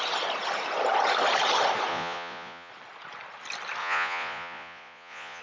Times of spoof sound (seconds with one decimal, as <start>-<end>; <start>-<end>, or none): 1.9-2.7; 3.8-5.4